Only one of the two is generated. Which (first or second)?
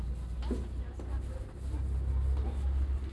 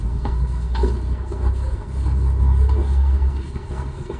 second